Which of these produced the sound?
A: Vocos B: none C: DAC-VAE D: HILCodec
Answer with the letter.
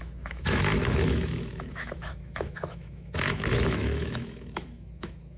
C